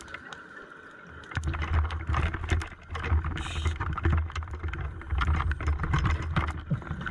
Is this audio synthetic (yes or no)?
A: no